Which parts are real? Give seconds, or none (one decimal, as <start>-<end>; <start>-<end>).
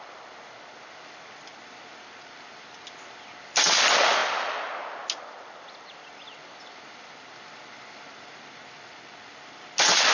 0.0-10.1